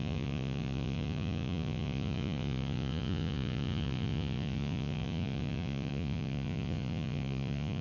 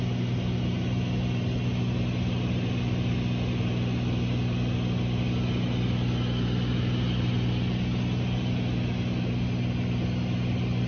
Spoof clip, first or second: first